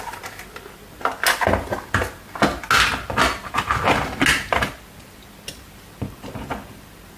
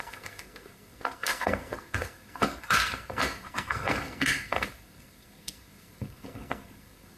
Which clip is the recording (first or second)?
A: first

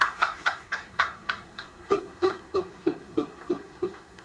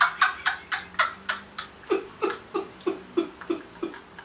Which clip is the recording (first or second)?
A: second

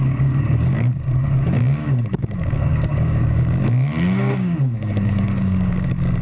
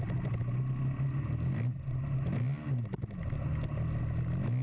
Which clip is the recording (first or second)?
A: second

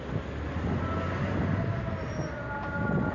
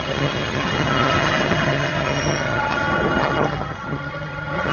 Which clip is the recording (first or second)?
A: first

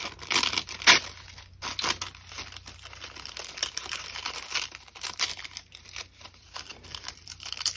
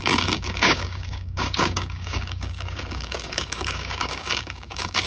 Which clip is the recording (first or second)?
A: first